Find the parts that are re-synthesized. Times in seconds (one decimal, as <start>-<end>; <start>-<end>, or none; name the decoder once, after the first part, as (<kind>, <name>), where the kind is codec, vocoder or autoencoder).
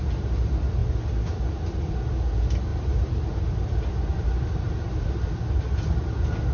2.7-3.4 (vocoder, BigVGAN v2); 4.1-5.2